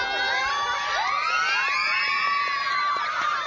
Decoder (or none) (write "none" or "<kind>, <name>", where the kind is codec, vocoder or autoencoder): none